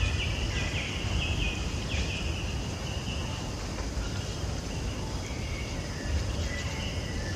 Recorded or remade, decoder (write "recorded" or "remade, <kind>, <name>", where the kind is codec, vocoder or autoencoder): recorded